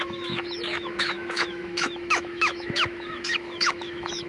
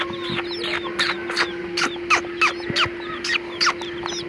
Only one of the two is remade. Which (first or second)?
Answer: first